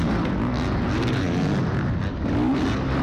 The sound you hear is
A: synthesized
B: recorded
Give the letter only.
B